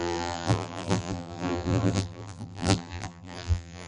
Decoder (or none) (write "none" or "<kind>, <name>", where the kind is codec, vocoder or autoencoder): vocoder, BigVGAN v2